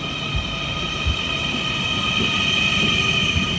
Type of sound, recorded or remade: recorded